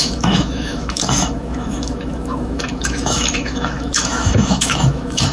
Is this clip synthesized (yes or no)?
yes